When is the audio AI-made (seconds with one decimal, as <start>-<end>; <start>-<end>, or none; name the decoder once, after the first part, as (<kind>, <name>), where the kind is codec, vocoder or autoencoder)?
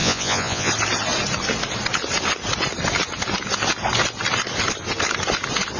0.0-0.7 (vocoder, Vocos)